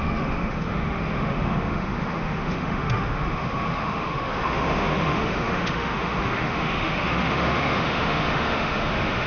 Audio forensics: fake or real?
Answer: fake